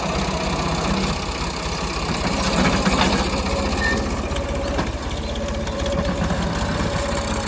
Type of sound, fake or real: real